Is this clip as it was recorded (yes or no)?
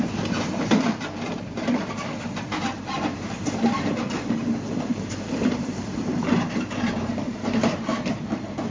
no